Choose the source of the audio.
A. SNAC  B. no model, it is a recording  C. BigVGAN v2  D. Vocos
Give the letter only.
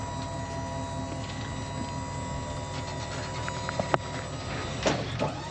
B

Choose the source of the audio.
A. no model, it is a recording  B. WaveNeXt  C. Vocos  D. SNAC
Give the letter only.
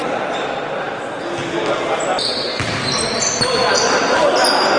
A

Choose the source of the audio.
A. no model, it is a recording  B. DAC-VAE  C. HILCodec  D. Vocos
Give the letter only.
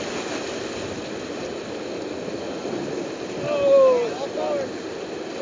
A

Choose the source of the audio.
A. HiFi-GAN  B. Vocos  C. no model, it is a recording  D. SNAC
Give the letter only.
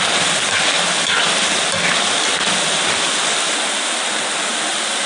C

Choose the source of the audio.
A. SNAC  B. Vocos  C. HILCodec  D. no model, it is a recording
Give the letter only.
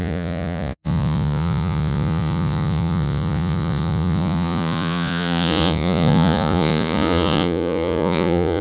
B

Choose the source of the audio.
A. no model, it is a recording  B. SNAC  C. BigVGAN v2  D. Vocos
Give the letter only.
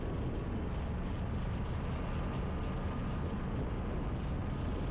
A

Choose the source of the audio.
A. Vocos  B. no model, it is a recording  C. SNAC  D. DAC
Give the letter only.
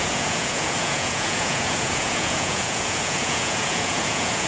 A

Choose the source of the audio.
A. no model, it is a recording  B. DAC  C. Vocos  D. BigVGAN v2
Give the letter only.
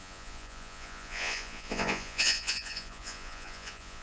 C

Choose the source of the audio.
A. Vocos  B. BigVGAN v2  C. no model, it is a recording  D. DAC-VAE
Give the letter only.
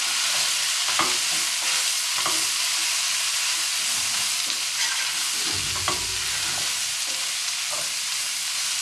C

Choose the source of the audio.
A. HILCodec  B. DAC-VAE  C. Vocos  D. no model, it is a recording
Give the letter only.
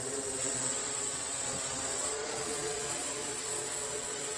C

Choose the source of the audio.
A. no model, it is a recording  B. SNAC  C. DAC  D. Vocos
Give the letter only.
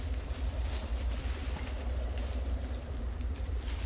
A